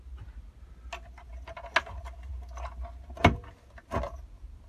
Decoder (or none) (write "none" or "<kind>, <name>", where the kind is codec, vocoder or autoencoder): none